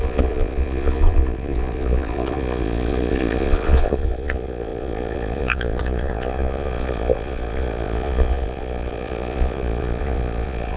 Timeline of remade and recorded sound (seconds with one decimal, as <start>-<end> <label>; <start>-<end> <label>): 0.0-10.8 remade